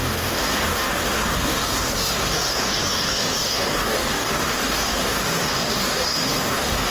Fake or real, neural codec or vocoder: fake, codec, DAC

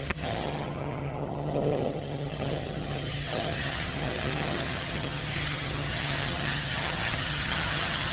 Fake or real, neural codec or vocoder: fake, vocoder, HiFi-GAN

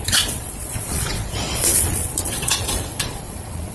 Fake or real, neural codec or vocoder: fake, vocoder, Vocos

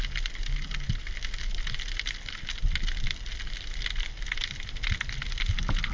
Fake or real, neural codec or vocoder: real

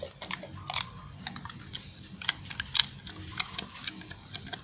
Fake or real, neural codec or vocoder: real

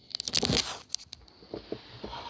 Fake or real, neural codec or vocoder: real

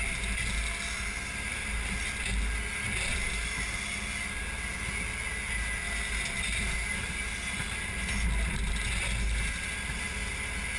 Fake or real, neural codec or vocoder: real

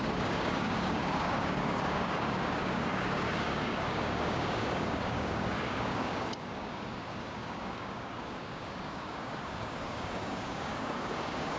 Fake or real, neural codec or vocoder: fake, codec, DAC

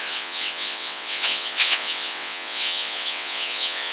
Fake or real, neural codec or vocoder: fake, vocoder, WaveNeXt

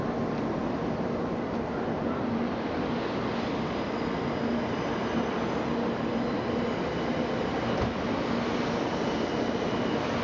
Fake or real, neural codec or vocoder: real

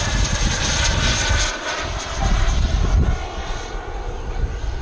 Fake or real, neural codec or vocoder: real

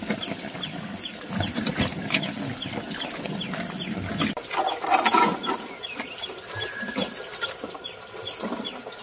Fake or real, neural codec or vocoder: real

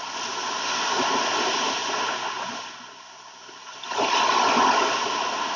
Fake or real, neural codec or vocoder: real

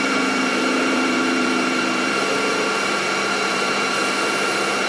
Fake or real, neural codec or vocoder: fake, vocoder, BigVGAN v2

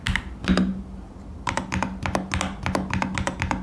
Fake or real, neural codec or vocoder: real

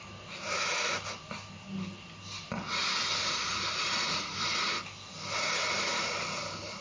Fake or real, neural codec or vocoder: real